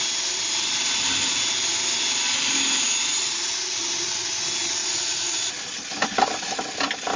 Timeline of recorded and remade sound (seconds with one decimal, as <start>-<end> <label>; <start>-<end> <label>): 0.0-4.8 recorded; 4.8-5.5 remade; 5.5-7.2 recorded